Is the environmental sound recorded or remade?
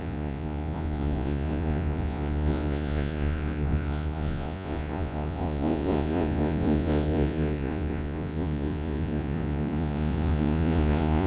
remade